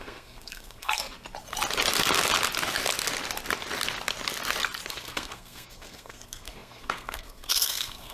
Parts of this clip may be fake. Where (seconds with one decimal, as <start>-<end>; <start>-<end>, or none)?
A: 0.0-1.0; 4.9-8.1